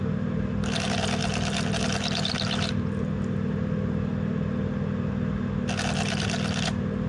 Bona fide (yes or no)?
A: yes